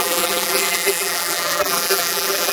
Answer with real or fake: fake